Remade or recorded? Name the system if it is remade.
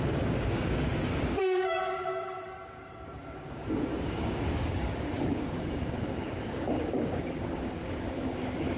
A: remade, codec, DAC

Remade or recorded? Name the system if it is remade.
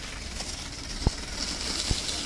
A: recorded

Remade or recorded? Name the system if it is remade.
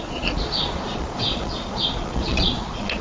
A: remade, vocoder, Vocos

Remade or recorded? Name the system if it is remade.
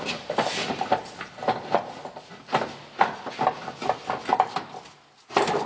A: recorded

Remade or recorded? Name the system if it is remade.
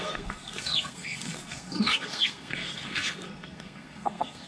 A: remade, codec, SNAC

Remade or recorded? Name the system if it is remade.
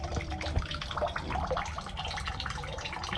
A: recorded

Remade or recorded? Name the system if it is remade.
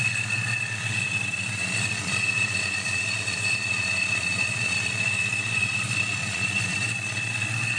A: remade, vocoder, Vocos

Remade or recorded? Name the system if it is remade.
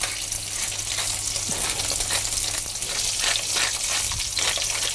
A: recorded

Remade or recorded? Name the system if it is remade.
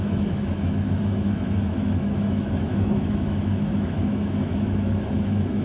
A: remade, autoencoder, DAC-VAE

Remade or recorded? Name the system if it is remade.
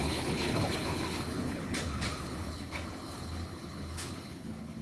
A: remade, codec, HILCodec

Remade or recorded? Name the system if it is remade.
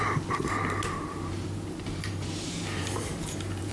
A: remade, vocoder, BigVGAN v2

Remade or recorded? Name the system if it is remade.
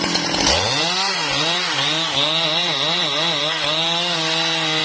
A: recorded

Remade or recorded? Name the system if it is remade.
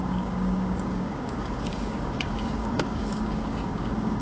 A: remade, codec, DAC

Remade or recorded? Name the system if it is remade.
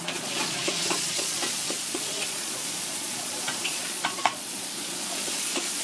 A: remade, vocoder, Vocos